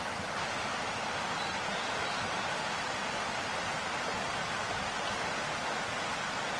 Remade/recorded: recorded